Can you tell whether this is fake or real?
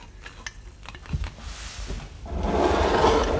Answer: real